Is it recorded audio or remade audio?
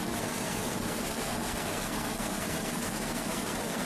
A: remade